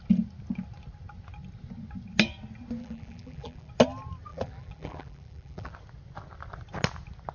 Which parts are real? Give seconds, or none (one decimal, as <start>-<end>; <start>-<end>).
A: 0.0-2.8; 3.7-4.3; 5.7-7.3